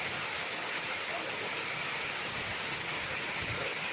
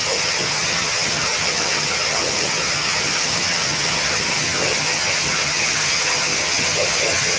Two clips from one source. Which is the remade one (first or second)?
second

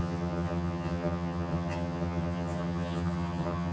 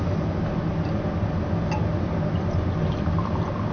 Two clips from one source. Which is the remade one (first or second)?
first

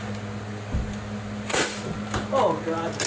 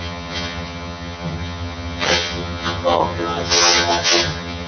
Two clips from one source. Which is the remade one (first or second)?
second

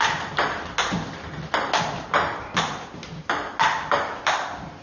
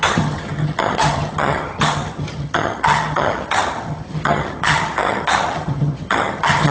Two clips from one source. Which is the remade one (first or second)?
second